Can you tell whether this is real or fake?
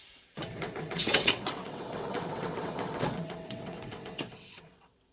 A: fake